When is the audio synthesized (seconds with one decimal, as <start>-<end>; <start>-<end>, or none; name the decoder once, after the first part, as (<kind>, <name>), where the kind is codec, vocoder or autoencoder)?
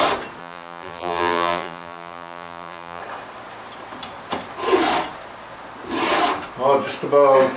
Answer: 0.4-3.0 (vocoder, BigVGAN v2)